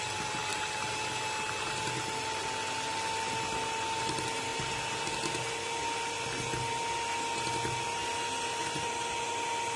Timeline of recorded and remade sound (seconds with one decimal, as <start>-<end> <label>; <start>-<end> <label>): 0.0-9.8 recorded